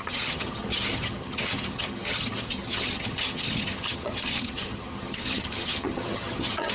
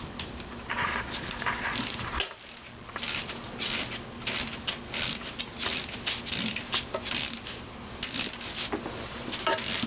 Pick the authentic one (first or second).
second